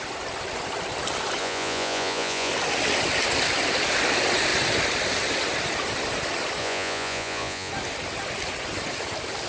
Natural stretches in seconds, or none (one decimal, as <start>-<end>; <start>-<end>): 0.0-1.4; 2.5-6.6; 7.7-9.5